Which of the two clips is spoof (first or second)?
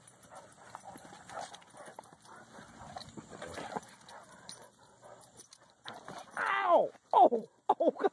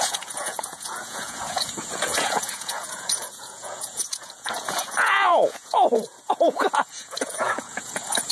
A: second